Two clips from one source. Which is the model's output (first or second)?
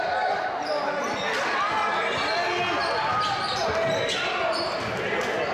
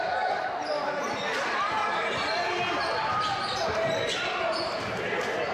second